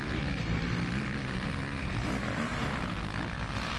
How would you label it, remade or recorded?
recorded